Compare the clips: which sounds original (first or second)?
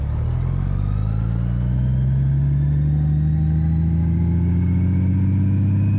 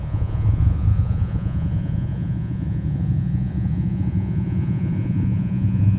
first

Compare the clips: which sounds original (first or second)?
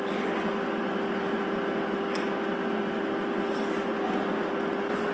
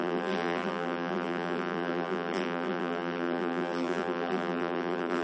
first